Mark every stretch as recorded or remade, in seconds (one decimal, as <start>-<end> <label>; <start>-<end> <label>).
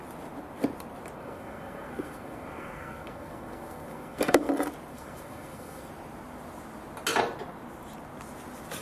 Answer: 0.0-1.2 recorded; 1.2-4.5 remade; 4.5-4.9 recorded; 4.9-5.9 remade; 5.9-8.8 recorded